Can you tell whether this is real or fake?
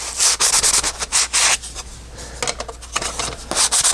real